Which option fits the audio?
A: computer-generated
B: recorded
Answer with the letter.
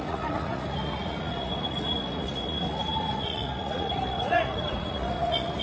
A